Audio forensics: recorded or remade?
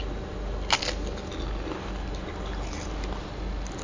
recorded